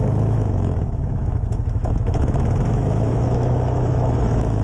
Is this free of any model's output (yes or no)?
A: no